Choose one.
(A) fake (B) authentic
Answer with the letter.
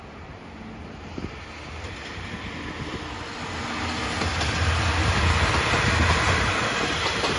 B